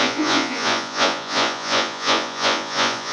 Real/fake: fake